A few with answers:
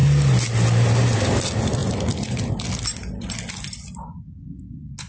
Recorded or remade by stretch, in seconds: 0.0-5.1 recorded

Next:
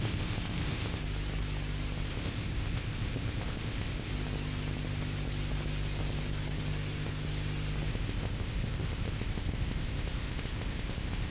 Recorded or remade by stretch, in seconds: 0.0-1.0 remade; 1.0-2.1 recorded; 2.1-4.1 remade; 4.1-7.9 recorded; 7.9-11.3 remade

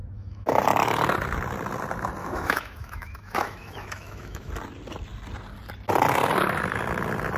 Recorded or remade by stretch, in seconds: 0.0-0.6 remade; 0.6-2.2 recorded; 2.2-4.5 remade; 4.5-7.4 recorded

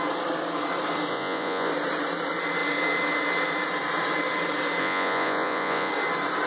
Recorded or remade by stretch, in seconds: 0.0-1.1 recorded; 1.1-1.7 remade; 1.7-4.8 recorded; 4.8-5.9 remade; 5.9-6.5 recorded

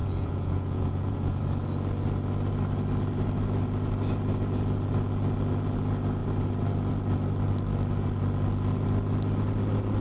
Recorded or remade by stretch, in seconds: 0.0-1.4 remade; 1.4-10.0 recorded

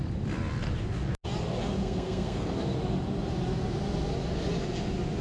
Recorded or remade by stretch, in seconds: 0.0-1.8 recorded; 1.8-2.5 remade; 2.5-5.2 recorded

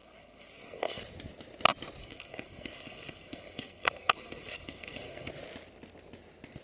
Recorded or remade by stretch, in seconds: 0.0-1.0 remade; 1.0-2.0 recorded; 2.0-5.3 remade; 5.3-6.6 recorded